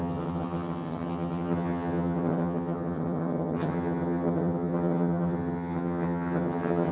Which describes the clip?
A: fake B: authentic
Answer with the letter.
A